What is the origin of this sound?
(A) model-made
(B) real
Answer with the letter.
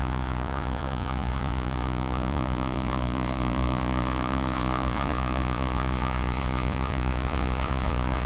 A